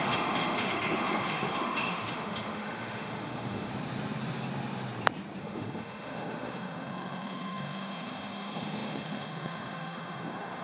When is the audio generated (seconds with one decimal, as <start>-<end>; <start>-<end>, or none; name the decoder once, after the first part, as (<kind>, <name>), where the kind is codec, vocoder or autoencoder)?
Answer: 0.0-3.7 (autoencoder, DAC-VAE); 5.4-10.6